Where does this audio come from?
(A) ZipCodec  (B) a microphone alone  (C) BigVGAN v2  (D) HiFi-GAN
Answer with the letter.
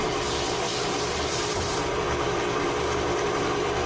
C